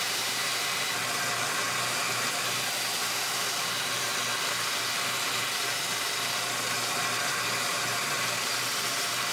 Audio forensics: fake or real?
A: fake